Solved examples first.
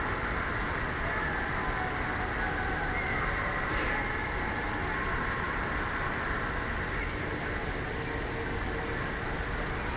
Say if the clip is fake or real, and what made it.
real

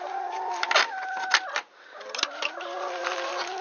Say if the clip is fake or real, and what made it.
real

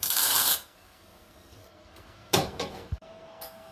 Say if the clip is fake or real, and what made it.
fake, codec, SNAC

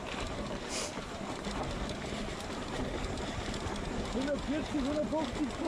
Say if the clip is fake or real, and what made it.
real